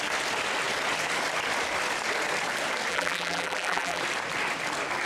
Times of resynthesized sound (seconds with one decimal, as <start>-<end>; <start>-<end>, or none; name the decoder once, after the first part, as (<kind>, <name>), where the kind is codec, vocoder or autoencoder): 2.9-4.0 (vocoder, BigVGAN v2)